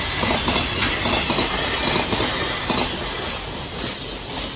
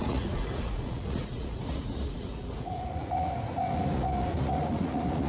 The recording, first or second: first